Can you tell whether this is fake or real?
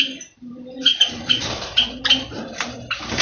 fake